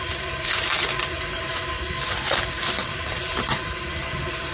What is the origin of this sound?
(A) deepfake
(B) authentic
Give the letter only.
A